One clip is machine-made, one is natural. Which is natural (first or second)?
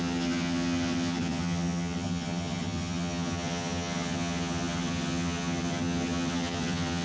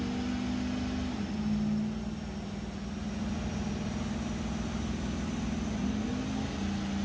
second